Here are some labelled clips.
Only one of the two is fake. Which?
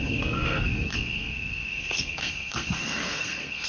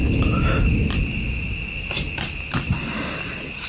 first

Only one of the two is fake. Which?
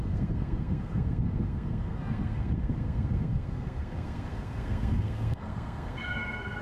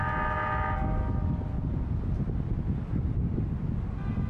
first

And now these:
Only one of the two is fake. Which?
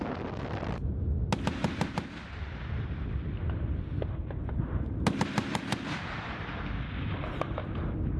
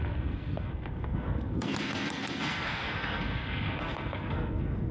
second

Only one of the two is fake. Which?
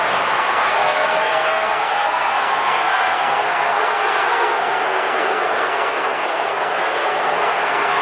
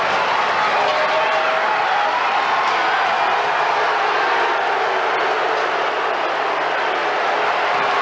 first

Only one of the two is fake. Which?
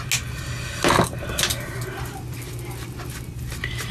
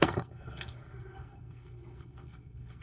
second